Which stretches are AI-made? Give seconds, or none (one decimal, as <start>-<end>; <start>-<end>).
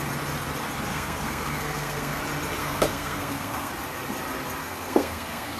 0.9-2.2; 2.6-3.7; 4.6-5.6